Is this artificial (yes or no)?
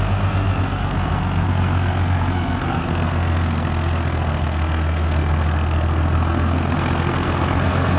yes